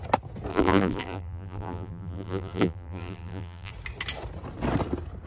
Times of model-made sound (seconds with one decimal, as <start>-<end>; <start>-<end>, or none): 0.5-3.7